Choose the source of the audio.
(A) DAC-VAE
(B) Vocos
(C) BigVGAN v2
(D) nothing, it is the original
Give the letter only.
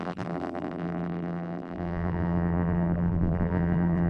C